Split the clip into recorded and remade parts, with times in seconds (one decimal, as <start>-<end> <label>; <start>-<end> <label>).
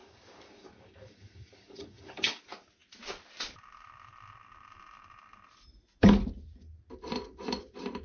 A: 0.0-2.4 remade; 2.4-8.0 recorded